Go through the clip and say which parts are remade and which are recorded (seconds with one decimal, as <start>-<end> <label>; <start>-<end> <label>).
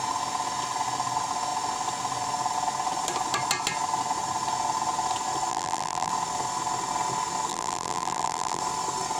0.0-5.5 recorded; 5.5-6.1 remade; 6.1-7.5 recorded; 7.5-8.6 remade; 8.6-9.2 recorded